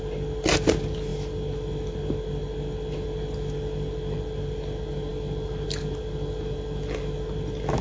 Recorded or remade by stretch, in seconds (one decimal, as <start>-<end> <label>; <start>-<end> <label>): 0.0-7.8 recorded